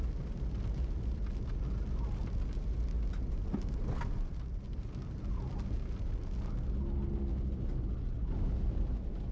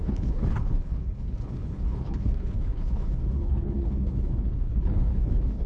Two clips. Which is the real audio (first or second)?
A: first